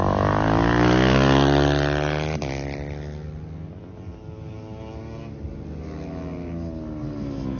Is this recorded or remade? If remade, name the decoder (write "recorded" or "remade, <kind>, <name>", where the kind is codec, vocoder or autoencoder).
recorded